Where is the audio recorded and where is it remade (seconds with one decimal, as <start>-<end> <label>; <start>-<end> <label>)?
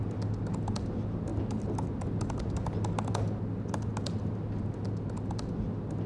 0.0-6.1 recorded